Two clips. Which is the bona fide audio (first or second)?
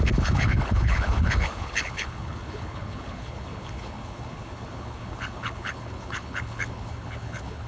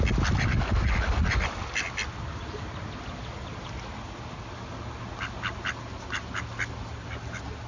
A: second